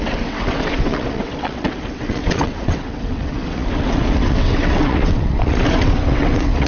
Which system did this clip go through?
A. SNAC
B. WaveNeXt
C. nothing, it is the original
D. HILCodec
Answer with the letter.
B